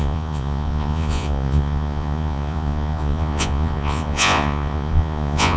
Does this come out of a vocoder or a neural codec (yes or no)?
yes